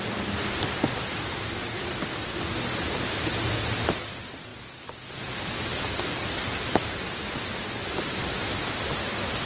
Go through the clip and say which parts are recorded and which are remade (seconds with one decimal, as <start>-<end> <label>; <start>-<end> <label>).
0.0-9.5 remade